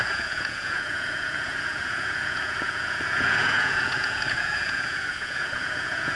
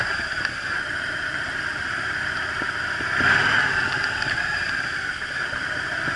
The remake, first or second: first